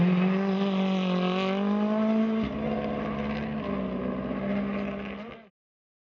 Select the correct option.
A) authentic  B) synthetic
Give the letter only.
A